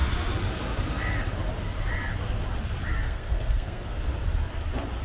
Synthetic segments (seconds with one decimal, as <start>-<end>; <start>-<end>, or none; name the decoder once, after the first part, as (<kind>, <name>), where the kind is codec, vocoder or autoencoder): 3.0-4.1 (codec, SNAC)